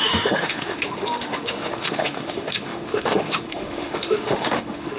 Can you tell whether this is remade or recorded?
remade